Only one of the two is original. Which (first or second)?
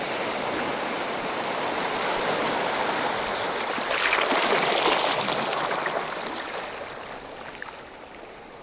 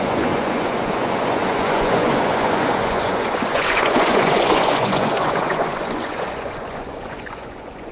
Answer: first